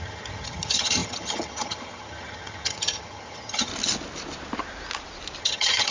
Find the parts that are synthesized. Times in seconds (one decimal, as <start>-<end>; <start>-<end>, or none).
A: 0.0-3.7; 5.4-5.9